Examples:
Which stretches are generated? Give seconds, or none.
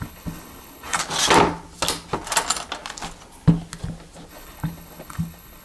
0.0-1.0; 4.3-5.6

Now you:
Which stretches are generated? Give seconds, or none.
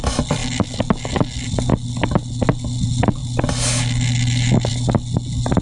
none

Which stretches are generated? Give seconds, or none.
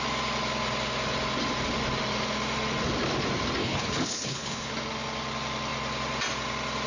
3.6-4.7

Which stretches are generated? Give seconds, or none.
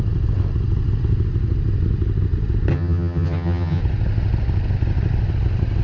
2.7-3.8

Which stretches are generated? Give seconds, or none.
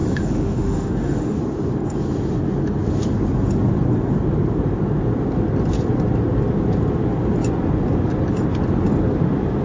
0.0-1.4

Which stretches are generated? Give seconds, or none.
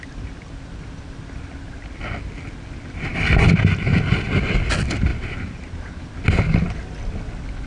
none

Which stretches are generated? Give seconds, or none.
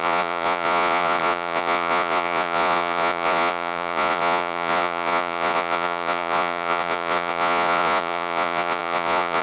0.0-9.4